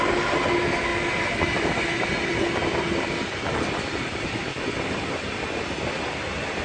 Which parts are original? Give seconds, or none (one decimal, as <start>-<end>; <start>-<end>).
0.0-6.6